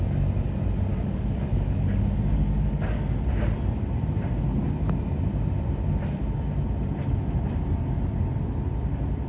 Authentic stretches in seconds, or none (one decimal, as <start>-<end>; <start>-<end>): 0.0-0.9; 3.0-9.3